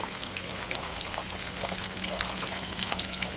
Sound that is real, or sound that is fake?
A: fake